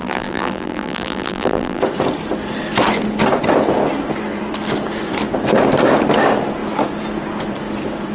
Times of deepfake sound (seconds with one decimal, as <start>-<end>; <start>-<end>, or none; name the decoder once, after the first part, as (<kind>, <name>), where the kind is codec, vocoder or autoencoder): 0.0-1.8 (vocoder, BigVGAN v2)